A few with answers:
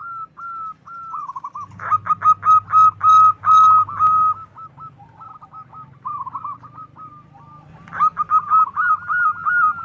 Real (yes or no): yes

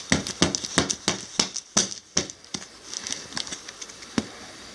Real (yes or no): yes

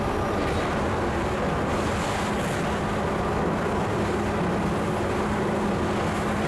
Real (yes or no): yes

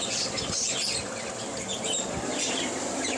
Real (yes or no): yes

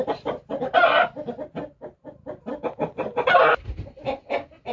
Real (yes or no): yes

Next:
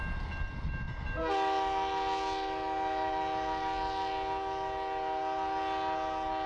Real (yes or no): yes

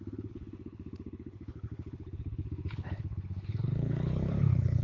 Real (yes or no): no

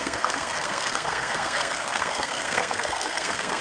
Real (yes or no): no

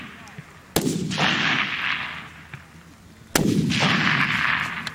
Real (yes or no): yes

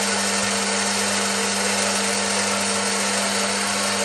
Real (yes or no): yes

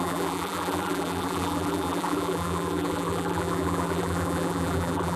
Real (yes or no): no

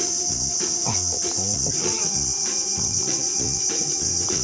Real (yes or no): no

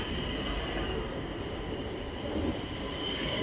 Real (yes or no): yes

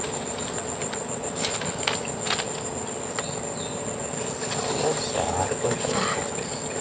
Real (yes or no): yes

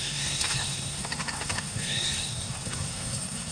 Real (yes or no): no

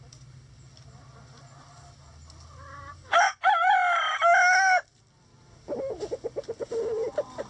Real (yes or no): yes